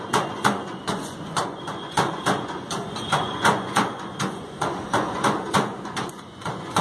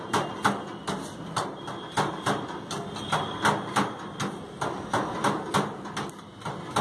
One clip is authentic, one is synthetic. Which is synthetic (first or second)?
first